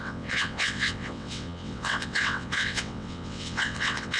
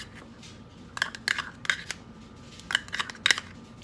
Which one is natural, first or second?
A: second